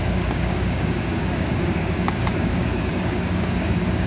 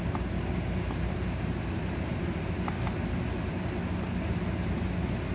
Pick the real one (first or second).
second